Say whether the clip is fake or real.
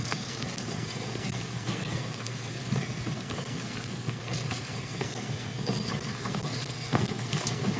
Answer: fake